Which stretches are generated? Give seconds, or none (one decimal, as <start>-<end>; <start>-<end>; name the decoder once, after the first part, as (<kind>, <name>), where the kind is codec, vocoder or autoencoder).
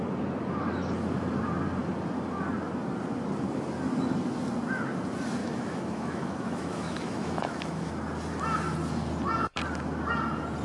5.4-7.9 (autoencoder, DAC-VAE)